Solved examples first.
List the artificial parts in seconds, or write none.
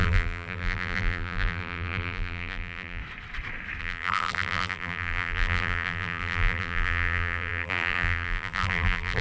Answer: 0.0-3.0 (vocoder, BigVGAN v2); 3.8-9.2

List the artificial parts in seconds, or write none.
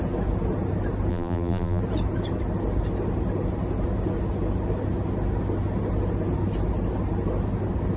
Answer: 1.1-1.8 (vocoder, BigVGAN v2)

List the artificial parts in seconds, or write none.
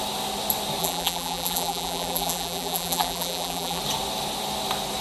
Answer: 0.8-3.8 (vocoder, BigVGAN v2)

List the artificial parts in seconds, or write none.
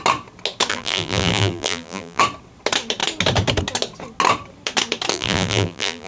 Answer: 0.7-2.2 (vocoder, BigVGAN v2); 5.1-6.1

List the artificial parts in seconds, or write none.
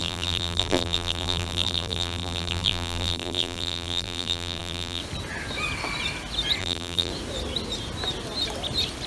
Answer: 0.0-5.0 (vocoder, BigVGAN v2); 6.6-7.1